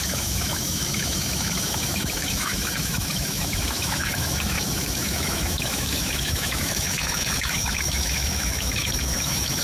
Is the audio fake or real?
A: fake